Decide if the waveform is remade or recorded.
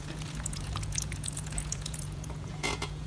remade